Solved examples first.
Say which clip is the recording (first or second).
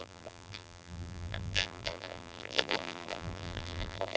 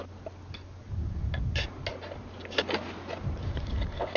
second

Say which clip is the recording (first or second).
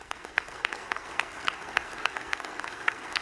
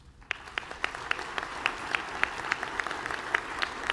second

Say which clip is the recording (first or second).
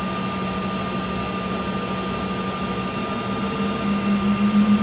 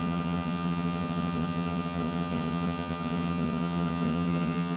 first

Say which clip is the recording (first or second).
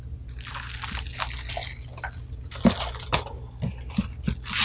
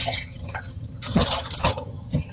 first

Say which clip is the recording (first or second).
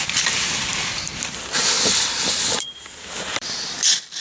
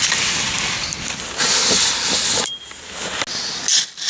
second